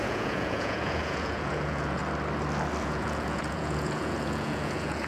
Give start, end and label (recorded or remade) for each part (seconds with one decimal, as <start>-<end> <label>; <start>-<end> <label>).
0.0-2.0 remade; 2.0-2.8 recorded; 2.8-5.1 remade

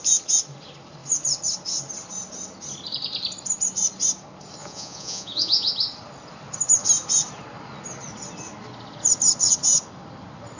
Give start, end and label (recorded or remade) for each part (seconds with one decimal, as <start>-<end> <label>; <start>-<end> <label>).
0.0-4.6 recorded; 4.6-5.7 remade; 5.7-10.6 recorded